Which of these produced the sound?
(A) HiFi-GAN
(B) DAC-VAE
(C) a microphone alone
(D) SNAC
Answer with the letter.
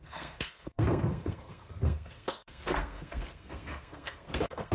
D